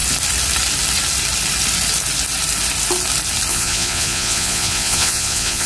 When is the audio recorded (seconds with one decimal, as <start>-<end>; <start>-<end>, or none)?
0.0-3.5